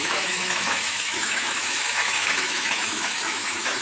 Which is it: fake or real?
fake